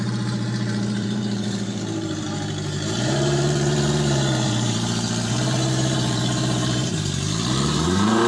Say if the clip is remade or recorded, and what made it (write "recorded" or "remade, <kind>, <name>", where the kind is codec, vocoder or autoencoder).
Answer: remade, vocoder, BigVGAN v2